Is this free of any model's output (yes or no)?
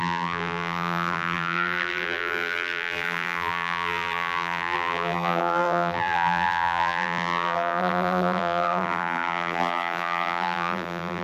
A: no